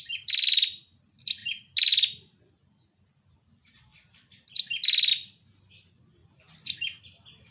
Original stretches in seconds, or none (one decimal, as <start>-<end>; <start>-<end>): 1.4-1.9; 6.2-7.0